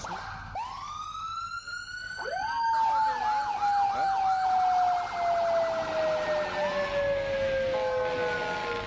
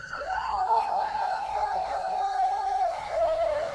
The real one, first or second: first